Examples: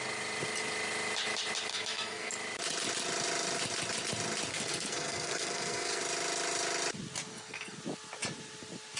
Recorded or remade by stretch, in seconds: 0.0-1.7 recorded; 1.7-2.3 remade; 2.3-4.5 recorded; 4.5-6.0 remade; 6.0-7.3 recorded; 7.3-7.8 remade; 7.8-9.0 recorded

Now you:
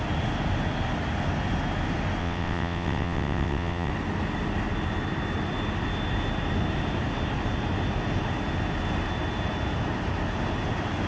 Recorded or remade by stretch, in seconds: 0.0-2.2 recorded; 2.2-3.9 remade; 3.9-11.1 recorded

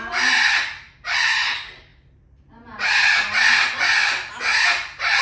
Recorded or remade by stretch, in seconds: 0.0-5.2 recorded

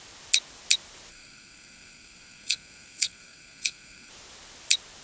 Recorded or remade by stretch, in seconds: 0.0-1.1 recorded; 1.1-4.1 remade; 4.1-5.0 recorded

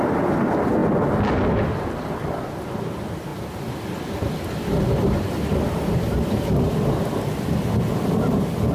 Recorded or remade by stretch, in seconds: 0.0-3.3 recorded; 3.3-6.7 remade; 6.7-8.7 recorded

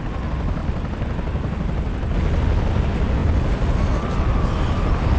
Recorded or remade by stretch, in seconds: 0.0-0.6 recorded; 0.6-2.2 remade; 2.2-5.2 recorded

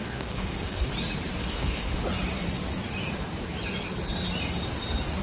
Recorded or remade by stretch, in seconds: 0.0-0.9 remade; 0.9-1.4 recorded; 1.4-2.0 remade; 2.0-5.2 recorded